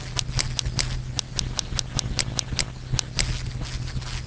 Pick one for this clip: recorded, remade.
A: recorded